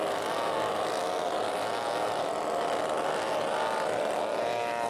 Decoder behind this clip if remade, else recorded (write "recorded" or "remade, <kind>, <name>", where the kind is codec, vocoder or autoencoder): recorded